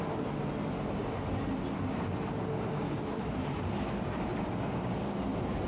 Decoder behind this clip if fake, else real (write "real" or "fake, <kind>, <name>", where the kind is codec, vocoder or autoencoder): real